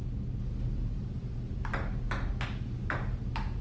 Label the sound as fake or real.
real